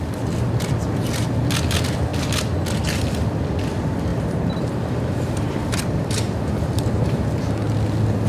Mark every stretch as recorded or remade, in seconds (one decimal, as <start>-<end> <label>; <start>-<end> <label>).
0.0-4.1 recorded; 4.1-7.4 remade; 7.4-8.3 recorded